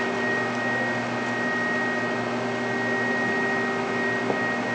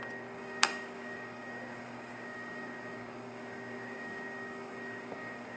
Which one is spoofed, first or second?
second